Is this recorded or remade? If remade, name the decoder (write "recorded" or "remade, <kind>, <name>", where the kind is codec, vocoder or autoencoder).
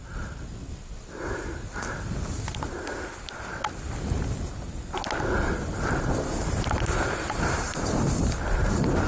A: recorded